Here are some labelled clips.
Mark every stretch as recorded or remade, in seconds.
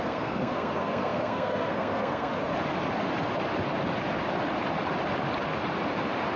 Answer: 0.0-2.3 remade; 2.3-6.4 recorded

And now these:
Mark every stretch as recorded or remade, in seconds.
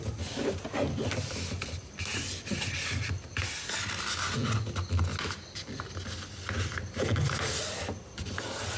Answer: 0.0-8.8 recorded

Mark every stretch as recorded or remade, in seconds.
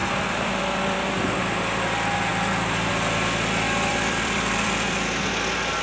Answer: 0.0-1.3 remade; 1.3-3.9 recorded; 3.9-5.2 remade; 5.2-5.8 recorded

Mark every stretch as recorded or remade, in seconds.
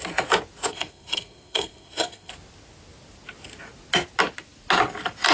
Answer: 0.0-0.7 recorded; 0.7-2.3 remade; 2.3-5.3 recorded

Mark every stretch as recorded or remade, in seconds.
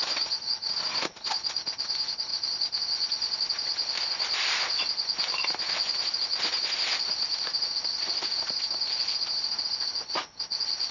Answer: 0.0-10.9 recorded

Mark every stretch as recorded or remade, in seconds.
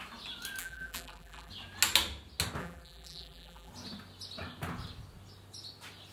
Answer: 0.0-0.6 recorded; 0.6-1.5 remade; 1.5-2.6 recorded; 2.6-3.7 remade; 3.7-6.1 recorded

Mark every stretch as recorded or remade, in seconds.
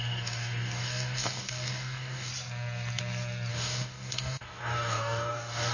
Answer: 0.0-2.3 remade; 2.3-3.5 recorded; 3.5-5.7 remade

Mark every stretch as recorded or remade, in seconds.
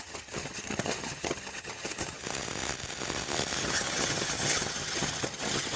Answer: 0.0-2.2 remade; 2.2-3.6 recorded; 3.6-5.8 remade